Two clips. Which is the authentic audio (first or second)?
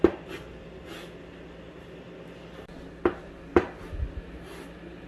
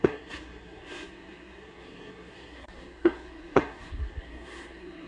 first